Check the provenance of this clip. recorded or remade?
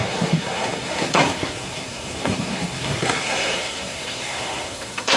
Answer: remade